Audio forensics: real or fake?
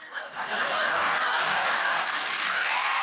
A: fake